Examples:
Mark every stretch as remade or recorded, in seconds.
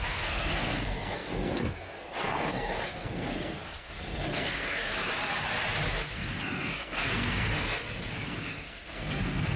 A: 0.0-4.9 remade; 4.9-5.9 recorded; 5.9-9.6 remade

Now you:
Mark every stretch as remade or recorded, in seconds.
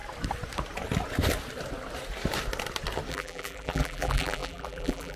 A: 0.0-3.1 recorded; 3.1-5.2 remade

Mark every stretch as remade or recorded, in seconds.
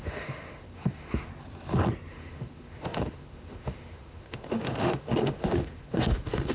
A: 0.0-1.3 remade; 1.3-2.1 recorded; 2.1-6.5 remade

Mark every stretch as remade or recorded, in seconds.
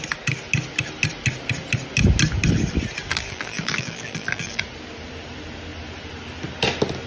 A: 0.0-3.1 recorded; 3.1-4.6 remade; 4.6-7.1 recorded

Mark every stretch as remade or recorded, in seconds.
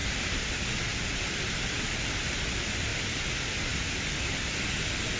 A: 0.0-0.5 remade; 0.5-0.9 recorded; 0.9-2.2 remade; 2.2-5.2 recorded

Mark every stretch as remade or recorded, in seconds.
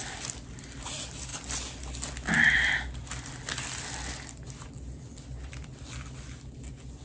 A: 0.0-7.0 recorded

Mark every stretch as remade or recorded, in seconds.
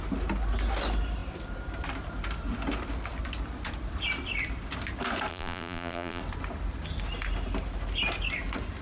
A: 0.0-5.3 recorded; 5.3-6.2 remade; 6.2-8.8 recorded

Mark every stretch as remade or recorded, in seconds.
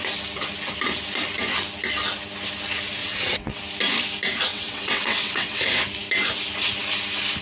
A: 0.0-3.0 recorded; 3.0-3.6 remade; 3.6-4.5 recorded; 4.5-5.6 remade; 5.6-7.4 recorded